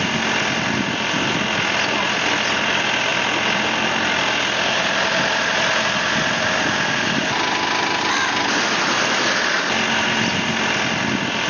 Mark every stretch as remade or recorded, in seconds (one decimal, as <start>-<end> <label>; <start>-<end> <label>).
0.0-11.5 recorded